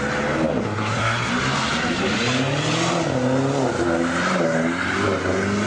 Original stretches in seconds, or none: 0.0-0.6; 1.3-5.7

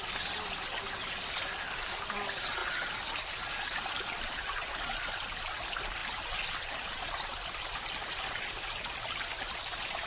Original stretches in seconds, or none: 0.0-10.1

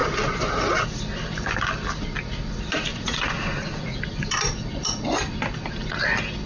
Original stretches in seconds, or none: 0.0-2.9; 4.0-6.5

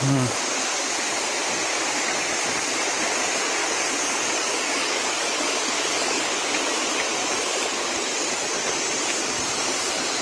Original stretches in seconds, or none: 0.0-3.6; 6.4-10.2

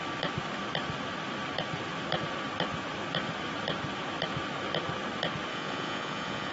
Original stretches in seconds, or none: 0.0-5.5

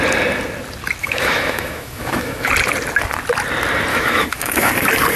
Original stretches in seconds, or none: 0.0-1.0; 2.5-3.9; 4.7-5.2

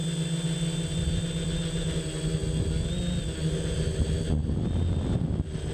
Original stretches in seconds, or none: 0.0-5.7

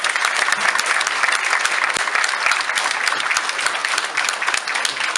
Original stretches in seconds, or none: 0.0-5.2